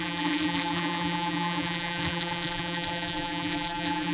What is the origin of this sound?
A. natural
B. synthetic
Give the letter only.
B